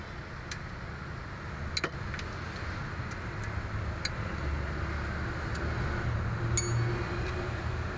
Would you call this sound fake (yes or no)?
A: no